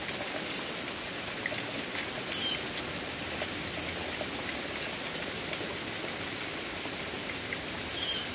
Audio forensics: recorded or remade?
recorded